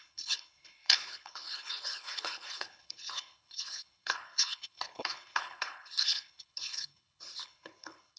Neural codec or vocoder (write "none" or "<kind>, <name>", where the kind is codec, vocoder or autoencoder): codec, HILCodec